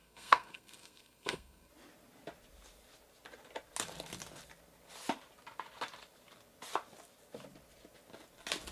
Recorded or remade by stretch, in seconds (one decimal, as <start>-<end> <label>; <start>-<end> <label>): 0.0-1.7 remade; 1.7-8.7 recorded